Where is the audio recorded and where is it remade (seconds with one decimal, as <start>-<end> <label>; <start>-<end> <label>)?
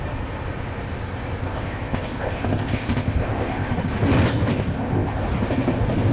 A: 0.0-1.5 recorded; 1.5-3.7 remade; 3.7-4.5 recorded; 4.5-5.2 remade; 5.2-6.1 recorded